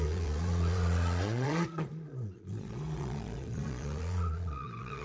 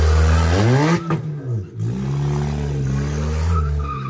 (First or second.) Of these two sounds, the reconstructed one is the first